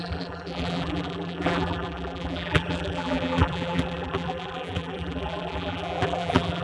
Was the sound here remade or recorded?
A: remade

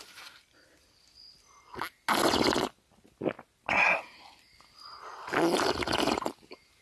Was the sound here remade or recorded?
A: recorded